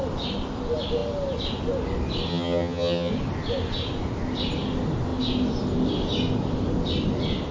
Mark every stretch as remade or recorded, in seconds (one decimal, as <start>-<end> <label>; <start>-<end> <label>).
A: 0.0-2.3 recorded; 2.3-3.1 remade; 3.1-7.5 recorded